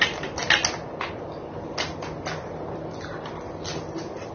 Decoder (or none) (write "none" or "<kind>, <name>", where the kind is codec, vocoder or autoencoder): none